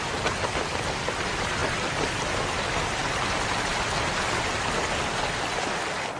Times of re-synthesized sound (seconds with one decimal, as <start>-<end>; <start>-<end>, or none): none